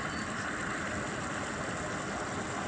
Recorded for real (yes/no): yes